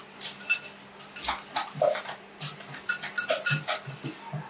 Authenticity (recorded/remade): recorded